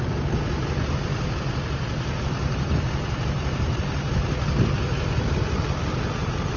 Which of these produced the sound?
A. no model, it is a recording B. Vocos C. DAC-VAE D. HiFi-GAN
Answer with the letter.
A